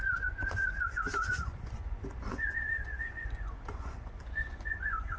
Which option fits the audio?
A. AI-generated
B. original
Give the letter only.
A